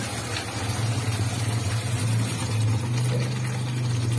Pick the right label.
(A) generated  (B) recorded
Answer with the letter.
B